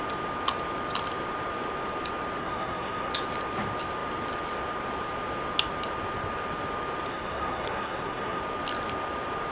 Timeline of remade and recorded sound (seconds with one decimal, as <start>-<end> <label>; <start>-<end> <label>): 0.0-2.4 recorded; 2.4-3.1 remade; 3.1-7.1 recorded; 7.1-8.4 remade; 8.4-9.5 recorded